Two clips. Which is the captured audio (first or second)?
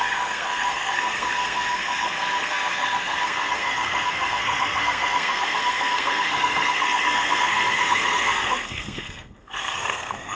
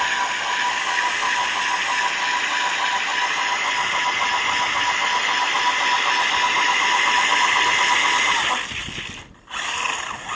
second